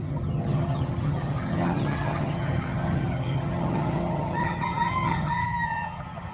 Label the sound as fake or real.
fake